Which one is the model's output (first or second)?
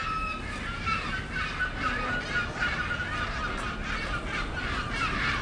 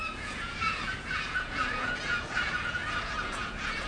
second